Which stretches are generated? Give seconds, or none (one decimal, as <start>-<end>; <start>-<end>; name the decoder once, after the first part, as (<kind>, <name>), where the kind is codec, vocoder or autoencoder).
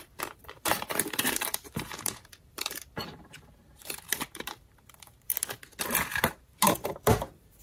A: 0.0-5.3 (vocoder, BigVGAN v2); 6.1-7.6